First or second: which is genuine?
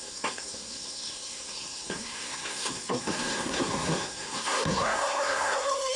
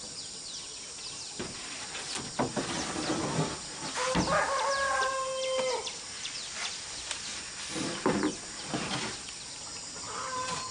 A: second